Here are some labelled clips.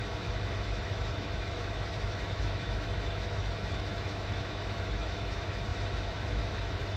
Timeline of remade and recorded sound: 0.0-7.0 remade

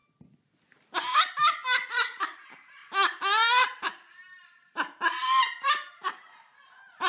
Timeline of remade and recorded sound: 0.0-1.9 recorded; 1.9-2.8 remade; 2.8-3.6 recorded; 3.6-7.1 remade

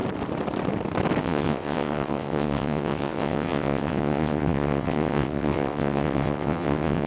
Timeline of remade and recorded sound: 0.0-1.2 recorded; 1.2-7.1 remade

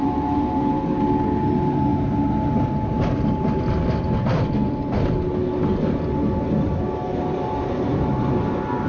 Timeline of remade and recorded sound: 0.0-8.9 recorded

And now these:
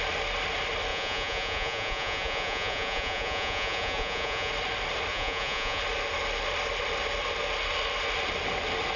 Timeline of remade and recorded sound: 0.0-0.9 recorded; 0.9-4.5 remade; 4.5-5.1 recorded; 5.1-5.8 remade; 5.8-9.0 recorded